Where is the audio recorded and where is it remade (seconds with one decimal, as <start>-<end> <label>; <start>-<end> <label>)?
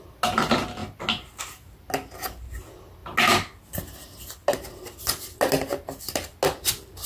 0.0-7.1 recorded